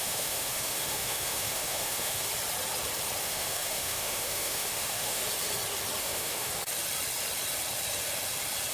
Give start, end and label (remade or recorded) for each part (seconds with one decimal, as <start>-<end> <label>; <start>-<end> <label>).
0.0-2.3 remade; 2.3-3.2 recorded; 3.2-5.2 remade; 5.2-6.0 recorded; 6.0-6.5 remade; 6.5-8.7 recorded